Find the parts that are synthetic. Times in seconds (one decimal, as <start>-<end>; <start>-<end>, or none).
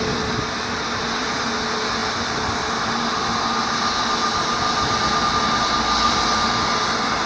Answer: none